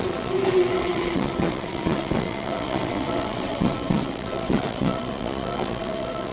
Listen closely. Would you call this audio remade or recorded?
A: remade